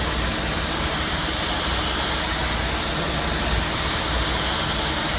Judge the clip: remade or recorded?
recorded